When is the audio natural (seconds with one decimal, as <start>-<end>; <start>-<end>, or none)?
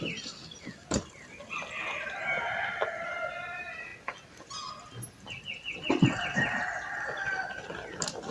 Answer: 0.0-8.3